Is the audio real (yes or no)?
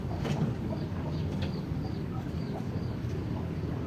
no